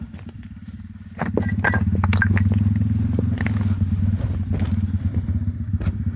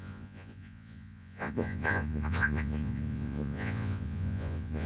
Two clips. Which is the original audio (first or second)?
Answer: first